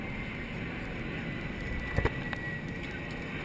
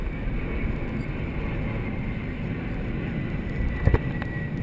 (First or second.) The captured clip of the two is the first